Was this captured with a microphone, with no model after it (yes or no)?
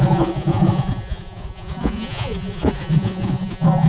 no